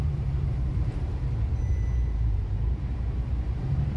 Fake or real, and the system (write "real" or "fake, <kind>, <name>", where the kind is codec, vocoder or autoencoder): fake, vocoder, BigVGAN v2